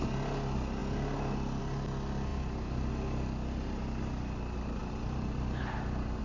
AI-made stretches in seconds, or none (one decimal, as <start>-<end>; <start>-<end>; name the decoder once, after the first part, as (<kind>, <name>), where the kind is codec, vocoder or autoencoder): 2.3-2.9 (vocoder, BigVGAN v2); 4.8-6.2